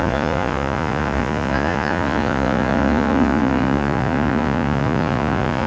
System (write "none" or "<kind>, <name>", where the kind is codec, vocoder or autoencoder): vocoder, Vocos